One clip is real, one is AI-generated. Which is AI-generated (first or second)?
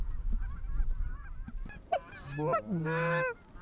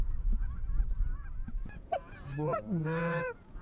second